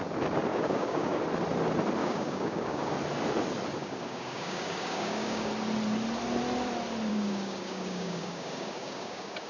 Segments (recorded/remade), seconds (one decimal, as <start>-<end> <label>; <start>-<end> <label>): 0.0-0.5 recorded; 0.5-1.2 remade; 1.2-2.0 recorded; 2.0-2.9 remade; 2.9-3.8 recorded; 3.8-5.5 remade; 5.5-7.1 recorded; 7.1-9.5 remade

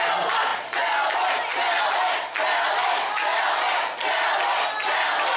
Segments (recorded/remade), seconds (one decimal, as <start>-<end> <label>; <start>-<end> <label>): 0.0-2.8 recorded; 2.8-3.4 remade; 3.4-5.4 recorded

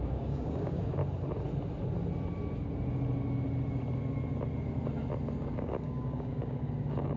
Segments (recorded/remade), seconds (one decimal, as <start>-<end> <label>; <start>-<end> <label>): 0.0-1.0 remade; 1.0-5.3 recorded; 5.3-7.2 remade